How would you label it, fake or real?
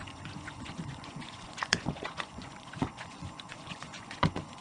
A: fake